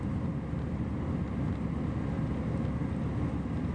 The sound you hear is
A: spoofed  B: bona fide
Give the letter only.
B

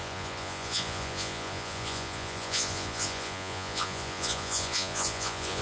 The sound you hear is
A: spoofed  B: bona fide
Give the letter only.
A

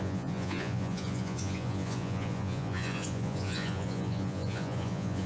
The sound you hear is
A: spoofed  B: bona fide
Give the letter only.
A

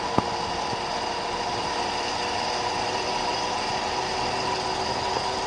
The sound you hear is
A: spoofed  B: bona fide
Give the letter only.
B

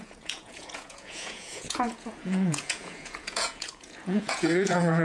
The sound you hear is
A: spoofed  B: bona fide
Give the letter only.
A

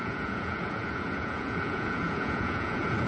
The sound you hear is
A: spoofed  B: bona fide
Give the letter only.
A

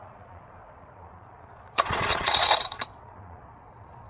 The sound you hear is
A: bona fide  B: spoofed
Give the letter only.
B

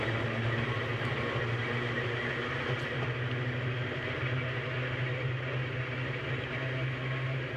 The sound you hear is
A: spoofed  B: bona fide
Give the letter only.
B